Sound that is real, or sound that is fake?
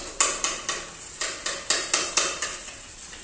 real